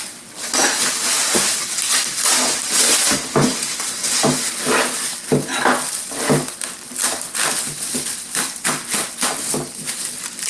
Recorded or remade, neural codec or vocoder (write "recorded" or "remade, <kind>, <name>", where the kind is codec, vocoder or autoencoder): recorded